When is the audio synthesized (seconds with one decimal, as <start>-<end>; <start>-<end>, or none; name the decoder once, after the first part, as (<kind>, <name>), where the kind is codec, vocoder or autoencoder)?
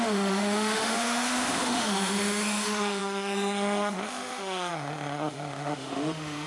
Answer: 0.0-6.5 (autoencoder, DAC-VAE)